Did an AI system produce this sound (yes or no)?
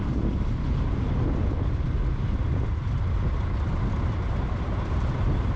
no